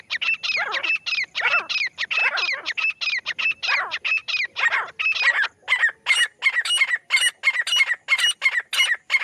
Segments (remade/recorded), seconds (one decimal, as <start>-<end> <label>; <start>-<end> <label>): 0.0-9.2 recorded